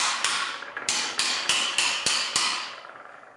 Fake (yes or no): yes